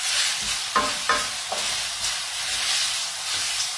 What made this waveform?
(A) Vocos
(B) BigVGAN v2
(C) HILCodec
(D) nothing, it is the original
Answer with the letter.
D